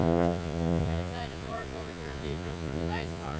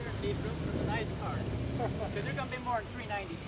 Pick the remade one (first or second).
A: first